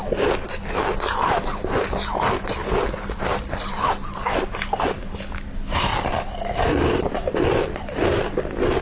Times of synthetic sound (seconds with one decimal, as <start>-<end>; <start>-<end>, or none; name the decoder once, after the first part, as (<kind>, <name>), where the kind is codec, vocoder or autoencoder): none

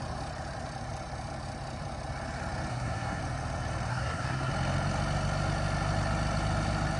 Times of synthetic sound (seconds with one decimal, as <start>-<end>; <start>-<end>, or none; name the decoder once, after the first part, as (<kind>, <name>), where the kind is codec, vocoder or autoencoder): 2.7-3.2 (codec, SNAC); 3.9-4.5

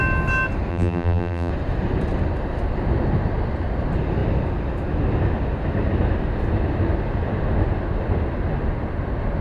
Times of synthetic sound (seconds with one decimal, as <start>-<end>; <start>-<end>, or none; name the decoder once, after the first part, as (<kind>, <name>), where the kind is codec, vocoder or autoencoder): 0.7-1.5 (vocoder, BigVGAN v2)

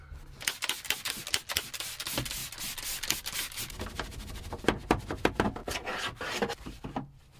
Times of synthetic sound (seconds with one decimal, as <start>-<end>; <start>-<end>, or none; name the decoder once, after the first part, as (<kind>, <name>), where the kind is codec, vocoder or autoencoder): 5.6-6.8 (vocoder, BigVGAN v2)

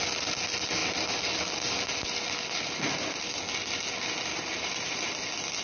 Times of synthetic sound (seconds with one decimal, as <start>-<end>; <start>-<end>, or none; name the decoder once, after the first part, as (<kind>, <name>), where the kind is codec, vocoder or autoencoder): 4.3-5.1 (vocoder, BigVGAN v2)

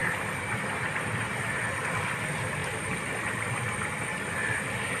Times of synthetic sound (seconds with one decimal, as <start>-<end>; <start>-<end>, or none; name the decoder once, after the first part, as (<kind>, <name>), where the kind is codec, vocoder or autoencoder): none

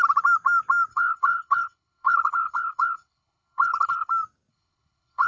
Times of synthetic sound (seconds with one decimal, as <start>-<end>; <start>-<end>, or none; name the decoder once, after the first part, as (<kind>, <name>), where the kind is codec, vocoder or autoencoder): 0.9-4.1 (codec, HILCodec); 4.5-5.3

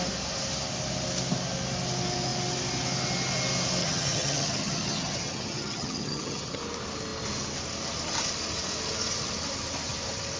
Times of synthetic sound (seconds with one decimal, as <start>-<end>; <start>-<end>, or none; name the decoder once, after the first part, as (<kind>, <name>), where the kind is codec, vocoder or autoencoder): 3.8-6.6 (vocoder, HiFi-GAN)